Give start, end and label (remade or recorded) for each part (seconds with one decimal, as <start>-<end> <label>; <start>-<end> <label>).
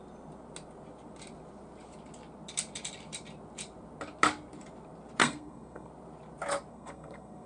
0.0-5.2 recorded; 5.2-5.9 remade; 5.9-6.7 recorded; 6.7-7.5 remade